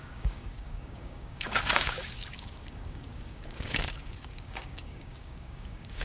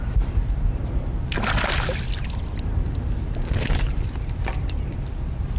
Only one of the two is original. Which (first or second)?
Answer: second